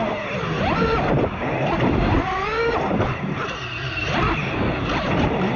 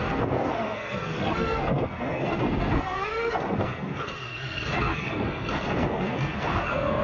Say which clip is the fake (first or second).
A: second